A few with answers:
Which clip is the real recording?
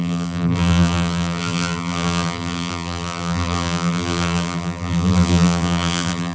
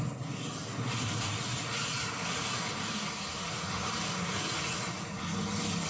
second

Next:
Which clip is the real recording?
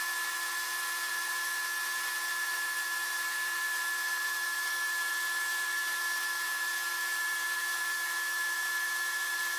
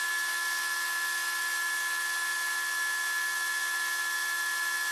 second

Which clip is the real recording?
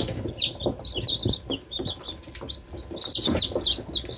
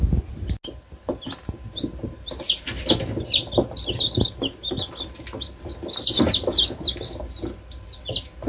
second